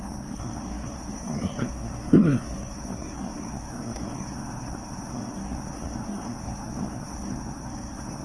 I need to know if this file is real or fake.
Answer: fake